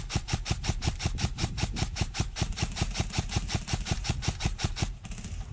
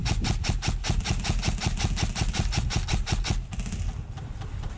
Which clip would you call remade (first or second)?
first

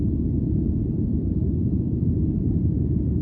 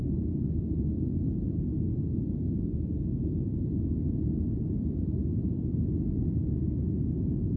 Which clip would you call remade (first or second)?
first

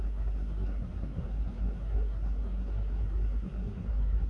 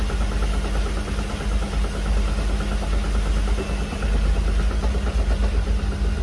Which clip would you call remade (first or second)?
first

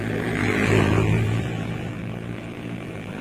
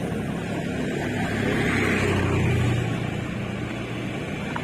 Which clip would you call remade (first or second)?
first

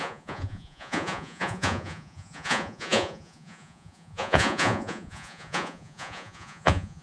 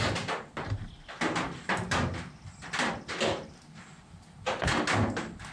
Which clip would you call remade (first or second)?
first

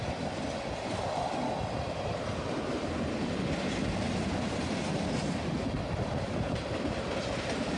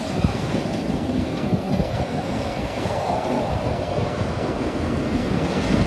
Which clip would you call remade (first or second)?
second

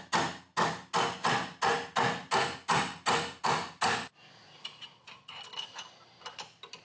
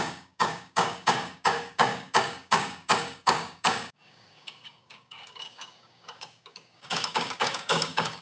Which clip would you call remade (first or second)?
second